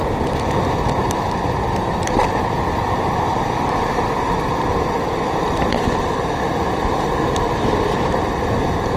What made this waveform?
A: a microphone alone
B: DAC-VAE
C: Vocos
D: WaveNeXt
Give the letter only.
A